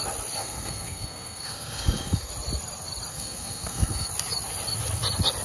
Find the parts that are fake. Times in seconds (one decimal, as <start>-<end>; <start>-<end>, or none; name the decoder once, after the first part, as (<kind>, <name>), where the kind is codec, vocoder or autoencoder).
0.4-2.3 (codec, SNAC); 3.1-4.1